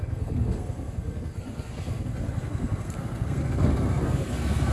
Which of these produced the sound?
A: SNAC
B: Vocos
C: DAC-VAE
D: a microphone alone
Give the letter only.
A